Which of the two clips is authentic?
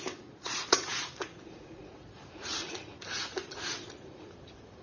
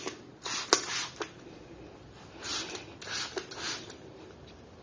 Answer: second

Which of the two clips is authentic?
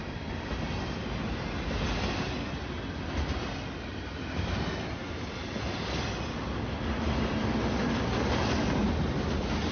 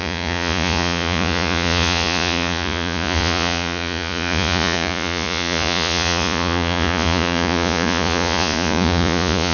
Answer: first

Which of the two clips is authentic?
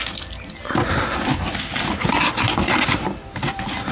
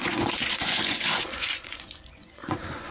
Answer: first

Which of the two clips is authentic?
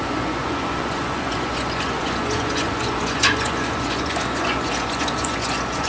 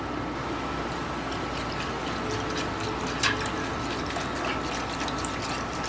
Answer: second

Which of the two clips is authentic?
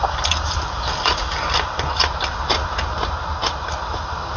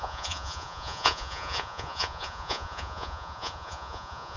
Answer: first